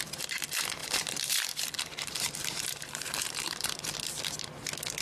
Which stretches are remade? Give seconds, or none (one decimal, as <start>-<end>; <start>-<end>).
0.8-3.8